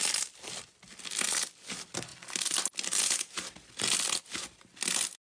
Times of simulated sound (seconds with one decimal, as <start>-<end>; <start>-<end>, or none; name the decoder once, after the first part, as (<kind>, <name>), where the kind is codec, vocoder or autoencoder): none